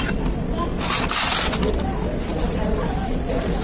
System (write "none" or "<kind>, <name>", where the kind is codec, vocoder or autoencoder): none